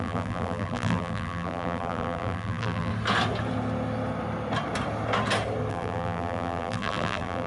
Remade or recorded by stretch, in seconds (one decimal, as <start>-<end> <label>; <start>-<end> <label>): 0.0-2.9 remade; 2.9-5.7 recorded; 5.7-7.5 remade